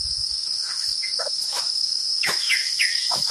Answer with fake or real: fake